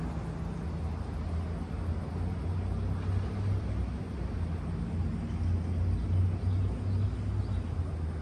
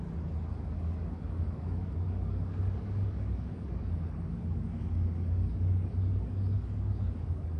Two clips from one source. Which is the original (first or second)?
first